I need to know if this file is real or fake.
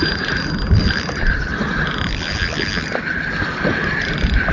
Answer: real